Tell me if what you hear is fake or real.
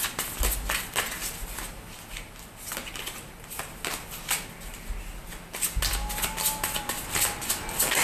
real